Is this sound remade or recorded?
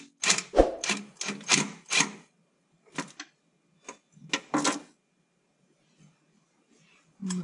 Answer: recorded